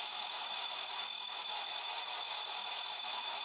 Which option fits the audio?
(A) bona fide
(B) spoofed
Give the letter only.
B